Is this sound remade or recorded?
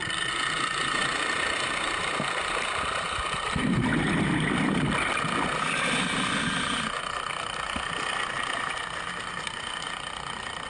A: recorded